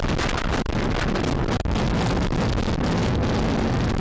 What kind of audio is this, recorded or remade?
recorded